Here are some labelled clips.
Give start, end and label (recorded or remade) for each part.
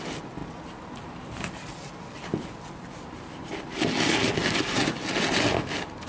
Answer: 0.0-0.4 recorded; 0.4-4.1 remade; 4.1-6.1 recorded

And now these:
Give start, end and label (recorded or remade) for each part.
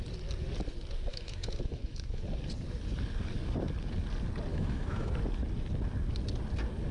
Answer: 0.0-1.1 recorded; 1.1-2.2 remade; 2.2-4.5 recorded; 4.5-5.1 remade; 5.1-6.9 recorded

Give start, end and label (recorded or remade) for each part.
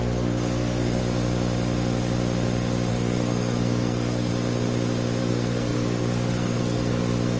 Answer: 0.0-1.0 remade; 1.0-2.9 recorded; 2.9-4.3 remade; 4.3-5.2 recorded; 5.2-7.4 remade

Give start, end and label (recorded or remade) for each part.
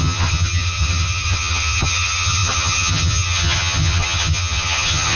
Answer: 0.0-5.2 remade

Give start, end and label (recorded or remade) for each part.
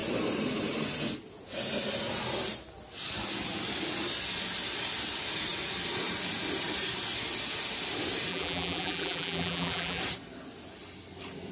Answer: 0.0-8.3 recorded; 8.3-10.0 remade; 10.0-11.5 recorded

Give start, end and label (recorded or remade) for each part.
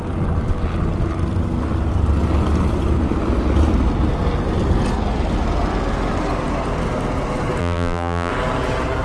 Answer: 0.0-7.6 recorded; 7.6-8.3 remade; 8.3-9.0 recorded